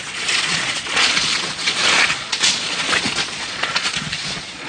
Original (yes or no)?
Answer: no